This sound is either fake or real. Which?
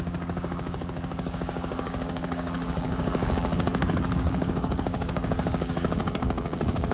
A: fake